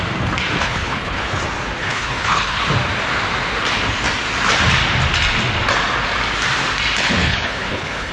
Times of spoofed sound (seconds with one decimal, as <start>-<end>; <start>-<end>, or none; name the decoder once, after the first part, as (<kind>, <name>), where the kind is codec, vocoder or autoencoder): 0.6-1.4 (codec, HILCodec); 1.8-2.6; 7.2-8.1